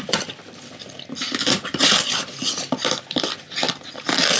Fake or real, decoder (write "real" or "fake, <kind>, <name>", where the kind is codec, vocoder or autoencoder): real